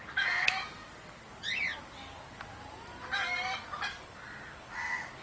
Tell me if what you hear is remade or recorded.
recorded